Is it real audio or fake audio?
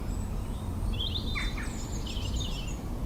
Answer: real